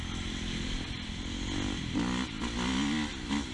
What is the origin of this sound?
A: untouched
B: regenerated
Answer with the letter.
A